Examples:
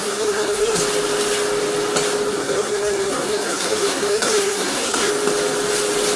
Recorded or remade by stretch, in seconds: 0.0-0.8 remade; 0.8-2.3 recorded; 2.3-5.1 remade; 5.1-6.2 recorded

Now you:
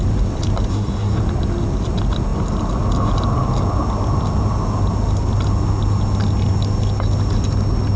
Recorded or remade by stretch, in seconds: 0.0-0.7 recorded; 0.7-1.2 remade; 1.2-8.0 recorded

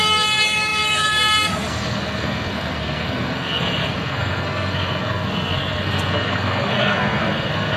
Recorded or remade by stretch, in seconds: 0.0-7.8 remade

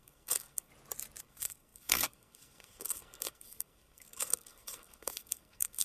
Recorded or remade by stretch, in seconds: 0.0-0.7 remade; 0.7-1.2 recorded; 1.2-5.8 remade

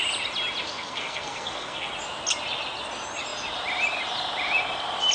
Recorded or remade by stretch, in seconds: 0.0-0.6 recorded; 0.6-1.9 remade; 1.9-5.1 recorded

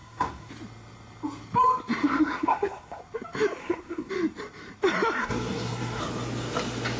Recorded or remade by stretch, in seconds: 0.0-0.5 remade; 0.5-2.0 recorded; 2.0-3.0 remade; 3.0-3.6 recorded; 3.6-4.1 remade; 4.1-5.2 recorded; 5.2-6.0 remade; 6.0-7.0 recorded